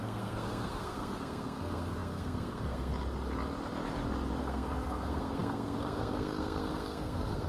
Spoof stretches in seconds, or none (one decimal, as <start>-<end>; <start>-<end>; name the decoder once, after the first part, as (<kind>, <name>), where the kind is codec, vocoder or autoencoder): 0.0-2.9 (codec, SNAC); 4.4-7.5